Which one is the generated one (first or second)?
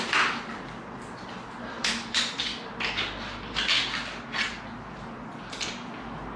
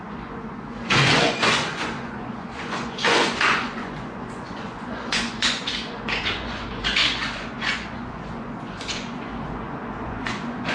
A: second